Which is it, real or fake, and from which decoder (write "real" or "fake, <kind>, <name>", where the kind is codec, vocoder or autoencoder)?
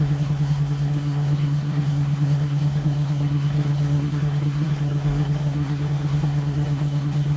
fake, codec, SNAC